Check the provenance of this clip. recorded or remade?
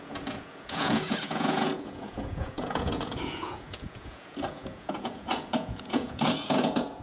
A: remade